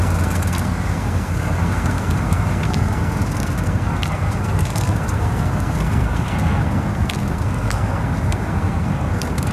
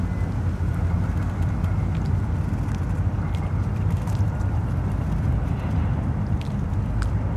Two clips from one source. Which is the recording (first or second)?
second